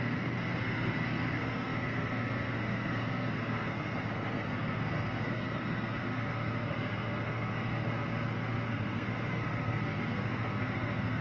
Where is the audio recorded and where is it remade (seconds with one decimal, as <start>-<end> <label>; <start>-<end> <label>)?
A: 0.0-11.2 remade